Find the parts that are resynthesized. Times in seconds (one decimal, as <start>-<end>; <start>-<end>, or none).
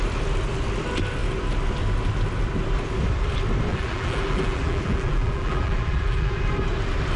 3.7-6.3